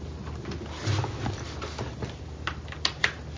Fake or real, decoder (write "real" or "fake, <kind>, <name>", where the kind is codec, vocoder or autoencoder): real